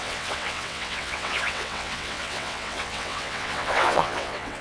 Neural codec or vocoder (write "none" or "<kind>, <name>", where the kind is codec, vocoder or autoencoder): vocoder, WaveNeXt